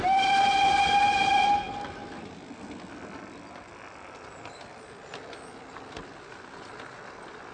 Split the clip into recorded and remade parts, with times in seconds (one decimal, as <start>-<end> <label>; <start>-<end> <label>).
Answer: 0.0-7.5 recorded